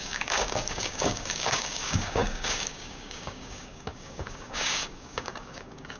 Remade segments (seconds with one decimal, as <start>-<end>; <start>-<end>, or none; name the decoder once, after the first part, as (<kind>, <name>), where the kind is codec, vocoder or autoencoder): 0.0-6.0 (codec, DAC)